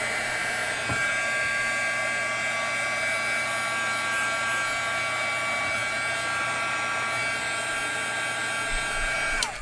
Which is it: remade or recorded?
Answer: recorded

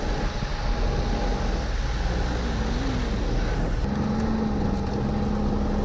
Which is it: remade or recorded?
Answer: recorded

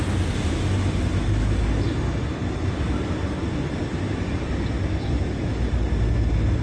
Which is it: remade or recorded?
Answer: recorded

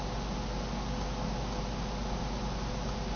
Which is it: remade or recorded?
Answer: recorded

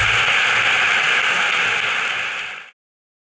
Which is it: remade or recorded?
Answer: recorded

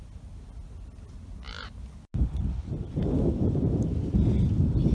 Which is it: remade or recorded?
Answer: recorded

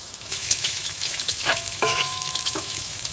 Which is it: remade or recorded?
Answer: remade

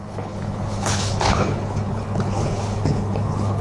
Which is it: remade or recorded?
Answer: remade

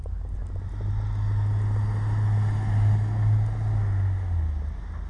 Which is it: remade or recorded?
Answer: recorded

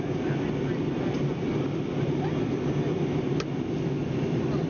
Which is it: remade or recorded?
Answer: recorded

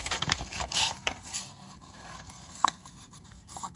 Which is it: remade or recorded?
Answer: remade